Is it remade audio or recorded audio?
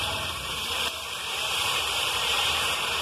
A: remade